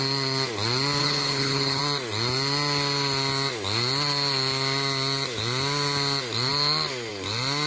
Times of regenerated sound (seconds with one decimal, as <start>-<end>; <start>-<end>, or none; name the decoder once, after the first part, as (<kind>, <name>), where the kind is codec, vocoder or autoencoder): 1.0-1.8 (codec, HILCodec)